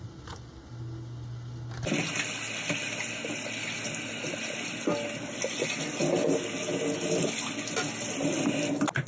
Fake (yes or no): no